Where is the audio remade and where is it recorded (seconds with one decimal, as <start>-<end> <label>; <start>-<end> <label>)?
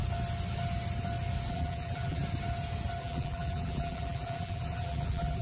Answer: 0.0-1.5 recorded; 1.5-2.2 remade; 2.2-3.0 recorded; 3.0-5.4 remade